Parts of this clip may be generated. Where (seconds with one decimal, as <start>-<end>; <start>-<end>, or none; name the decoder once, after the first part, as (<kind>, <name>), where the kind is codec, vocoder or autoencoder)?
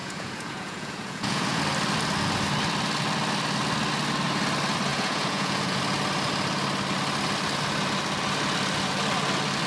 0.0-1.6 (vocoder, Vocos); 4.9-5.8